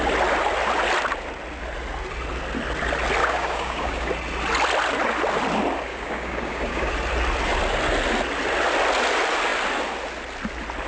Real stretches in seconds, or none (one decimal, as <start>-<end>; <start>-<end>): 0.0-3.2; 4.1-5.9; 6.9-10.9